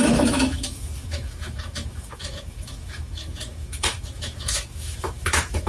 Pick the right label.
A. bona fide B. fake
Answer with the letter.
B